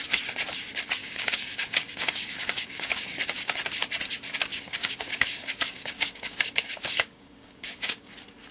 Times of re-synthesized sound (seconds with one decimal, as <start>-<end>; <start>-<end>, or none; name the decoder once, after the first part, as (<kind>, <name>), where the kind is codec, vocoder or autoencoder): 1.0-3.5 (codec, DAC); 4.5-8.1